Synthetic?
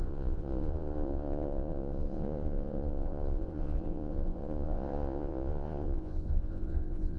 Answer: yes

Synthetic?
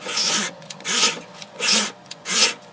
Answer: yes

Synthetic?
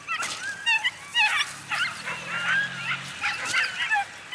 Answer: no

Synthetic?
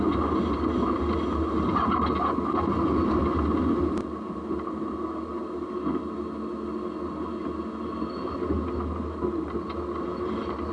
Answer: no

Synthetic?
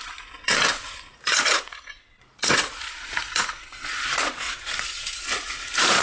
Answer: yes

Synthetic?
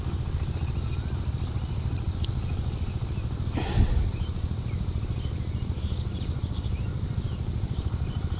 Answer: no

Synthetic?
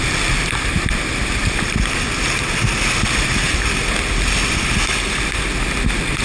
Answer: no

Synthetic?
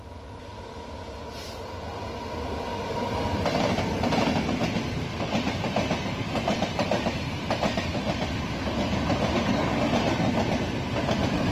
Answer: no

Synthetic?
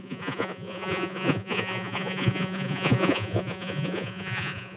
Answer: yes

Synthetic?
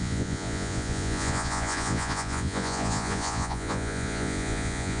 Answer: yes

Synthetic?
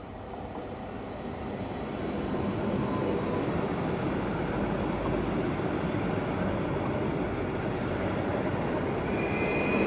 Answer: no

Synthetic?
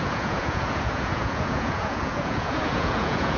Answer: yes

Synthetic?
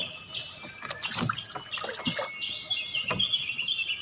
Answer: no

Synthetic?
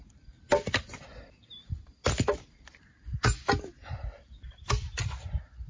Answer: no